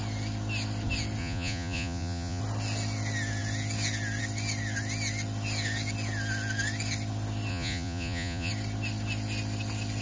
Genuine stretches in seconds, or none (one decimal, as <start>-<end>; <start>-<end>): 0.0-1.2; 2.4-7.5; 8.5-10.0